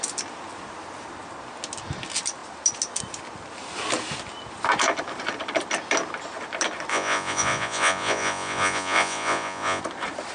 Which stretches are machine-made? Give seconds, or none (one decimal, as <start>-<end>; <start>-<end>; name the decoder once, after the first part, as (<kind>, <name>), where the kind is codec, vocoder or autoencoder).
6.9-9.8 (vocoder, Vocos)